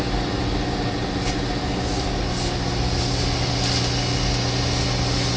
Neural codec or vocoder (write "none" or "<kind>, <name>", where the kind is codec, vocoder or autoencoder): none